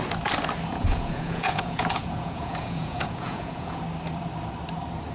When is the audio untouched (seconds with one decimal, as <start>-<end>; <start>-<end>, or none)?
0.0-0.7; 3.8-5.1